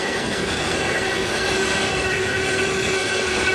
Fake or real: fake